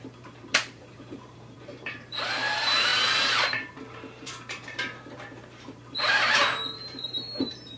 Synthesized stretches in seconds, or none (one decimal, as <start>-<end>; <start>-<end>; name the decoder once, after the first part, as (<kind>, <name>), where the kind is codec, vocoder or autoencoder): 0.0-7.8 (vocoder, BigVGAN v2)